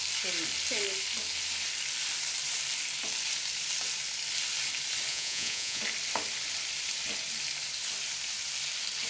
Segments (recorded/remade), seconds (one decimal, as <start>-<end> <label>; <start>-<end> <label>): 0.0-5.1 recorded; 5.1-5.8 remade; 5.8-9.1 recorded